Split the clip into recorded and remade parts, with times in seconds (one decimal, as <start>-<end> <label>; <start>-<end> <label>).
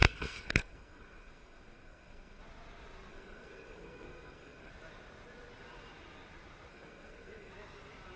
0.0-2.4 remade; 2.4-3.1 recorded; 3.1-4.7 remade; 4.7-6.7 recorded; 6.7-7.5 remade; 7.5-8.2 recorded